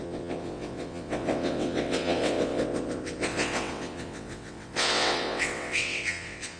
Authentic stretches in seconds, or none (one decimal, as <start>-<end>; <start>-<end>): none